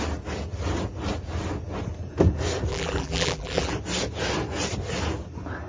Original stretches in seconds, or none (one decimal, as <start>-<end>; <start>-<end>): 0.0-2.7; 3.7-5.7